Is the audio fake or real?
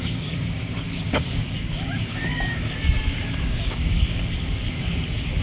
fake